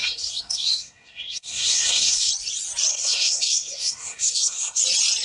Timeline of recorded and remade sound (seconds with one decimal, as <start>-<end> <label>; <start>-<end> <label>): 0.0-2.3 remade; 2.3-2.9 recorded; 2.9-4.8 remade; 4.8-5.2 recorded